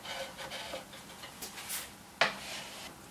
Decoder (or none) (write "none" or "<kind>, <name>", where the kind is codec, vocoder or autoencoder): none